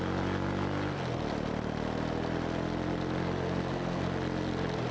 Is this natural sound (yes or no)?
yes